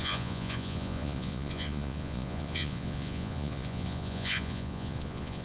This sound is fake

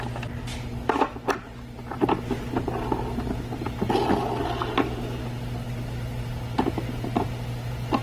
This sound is real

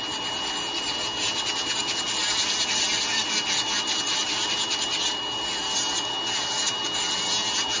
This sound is real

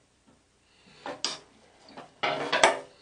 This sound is real